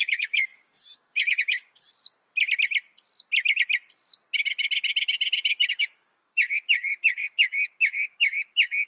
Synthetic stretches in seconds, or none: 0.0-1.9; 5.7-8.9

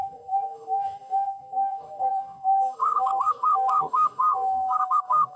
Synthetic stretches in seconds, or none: 0.0-5.4

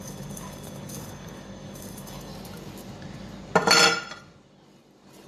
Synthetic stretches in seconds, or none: 0.0-2.3

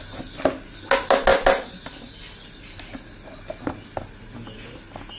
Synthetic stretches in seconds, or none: none

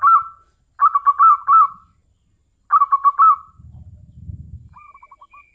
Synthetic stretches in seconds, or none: none